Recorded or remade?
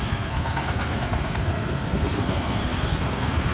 remade